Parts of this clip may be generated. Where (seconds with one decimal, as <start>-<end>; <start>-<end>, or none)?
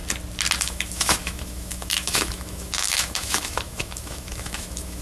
0.6-5.0